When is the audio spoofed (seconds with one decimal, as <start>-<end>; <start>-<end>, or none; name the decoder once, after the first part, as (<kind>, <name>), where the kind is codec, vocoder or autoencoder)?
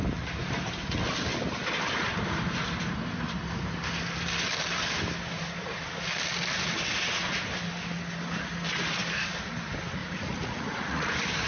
10.0-11.1 (vocoder, Vocos)